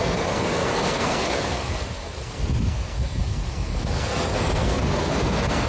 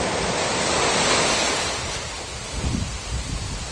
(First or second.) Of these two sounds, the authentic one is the second